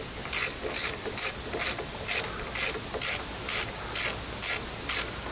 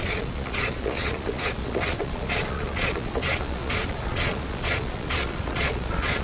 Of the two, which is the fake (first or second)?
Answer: second